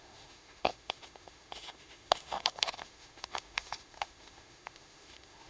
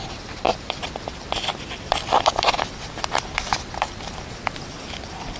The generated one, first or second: first